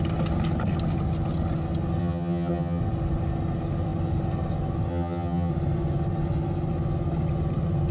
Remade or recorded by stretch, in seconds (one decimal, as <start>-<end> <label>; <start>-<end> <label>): 0.0-2.0 recorded; 2.0-2.8 remade; 2.8-4.9 recorded; 4.9-5.5 remade; 5.5-7.9 recorded